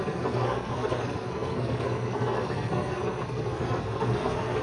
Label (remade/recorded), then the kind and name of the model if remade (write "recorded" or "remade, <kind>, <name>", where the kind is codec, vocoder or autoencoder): remade, codec, SNAC